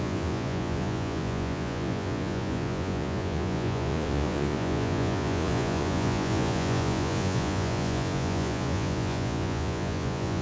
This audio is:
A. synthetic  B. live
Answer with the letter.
A